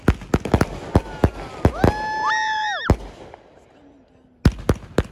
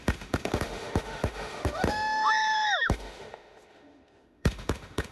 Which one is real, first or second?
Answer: first